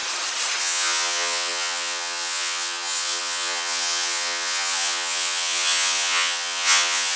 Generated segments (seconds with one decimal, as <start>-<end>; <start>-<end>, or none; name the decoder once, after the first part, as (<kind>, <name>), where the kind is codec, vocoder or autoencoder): 0.6-7.2 (vocoder, HiFi-GAN)